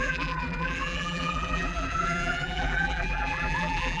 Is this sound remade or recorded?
remade